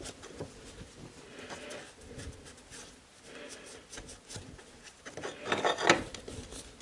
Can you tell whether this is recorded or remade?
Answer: recorded